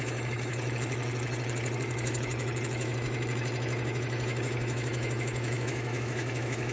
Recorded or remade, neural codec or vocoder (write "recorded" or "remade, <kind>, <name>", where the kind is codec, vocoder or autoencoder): remade, autoencoder, DAC-VAE